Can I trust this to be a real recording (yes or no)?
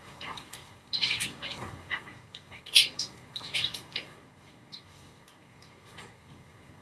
no